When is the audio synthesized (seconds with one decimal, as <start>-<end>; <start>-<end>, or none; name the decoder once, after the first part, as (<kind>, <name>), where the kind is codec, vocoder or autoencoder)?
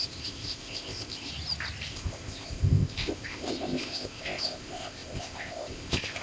0.0-1.3 (codec, ZipCodec); 1.9-6.2